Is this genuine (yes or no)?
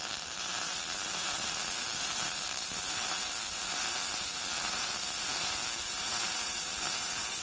no